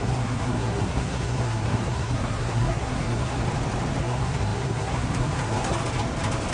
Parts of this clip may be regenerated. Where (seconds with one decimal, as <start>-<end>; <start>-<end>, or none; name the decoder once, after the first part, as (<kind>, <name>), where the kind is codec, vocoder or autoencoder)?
0.0-3.4 (codec, SNAC); 4.0-5.8